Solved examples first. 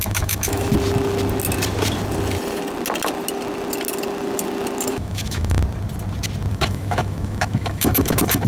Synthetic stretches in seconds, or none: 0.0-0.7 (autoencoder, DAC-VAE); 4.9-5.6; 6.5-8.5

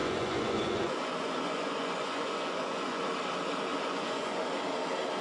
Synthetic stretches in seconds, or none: 0.0-3.0 (vocoder, Vocos); 3.7-4.5